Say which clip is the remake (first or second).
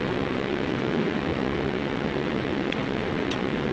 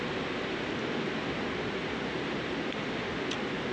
first